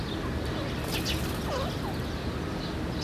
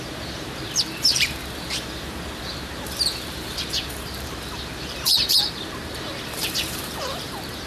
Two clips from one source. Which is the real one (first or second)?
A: first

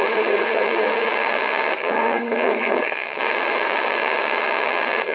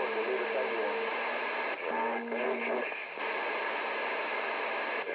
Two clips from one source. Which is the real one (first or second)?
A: second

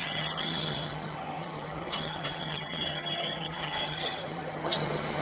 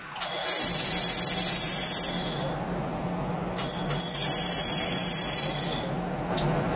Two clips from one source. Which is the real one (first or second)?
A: second